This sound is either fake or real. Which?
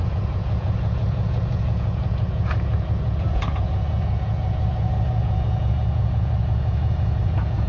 fake